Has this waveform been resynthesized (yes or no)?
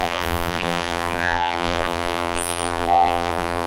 yes